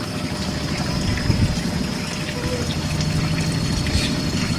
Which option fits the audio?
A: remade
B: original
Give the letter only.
A